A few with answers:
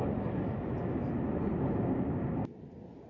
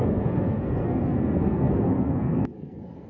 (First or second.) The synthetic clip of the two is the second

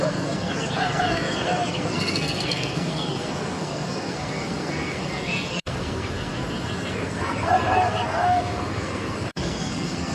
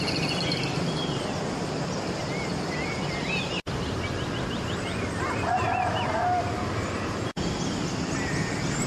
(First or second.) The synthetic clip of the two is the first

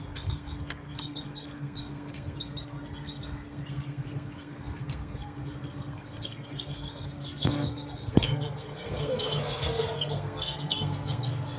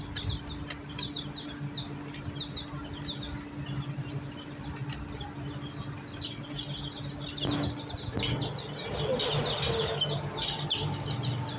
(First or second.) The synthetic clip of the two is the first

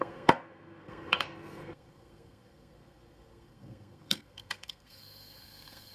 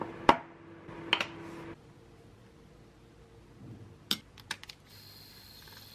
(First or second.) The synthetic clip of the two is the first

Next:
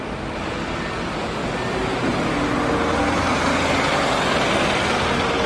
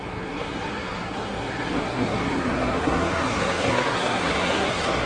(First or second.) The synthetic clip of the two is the second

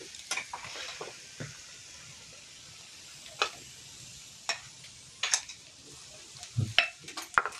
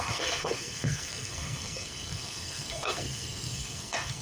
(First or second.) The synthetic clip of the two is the second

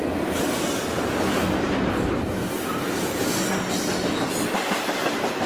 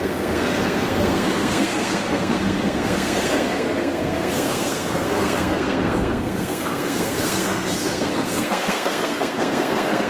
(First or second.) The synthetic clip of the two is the second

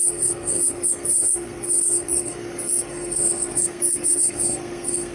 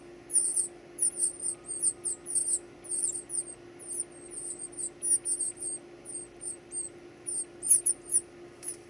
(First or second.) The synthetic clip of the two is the first